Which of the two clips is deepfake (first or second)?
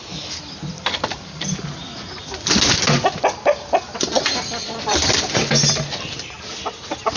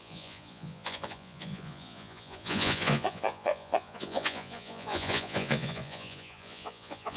second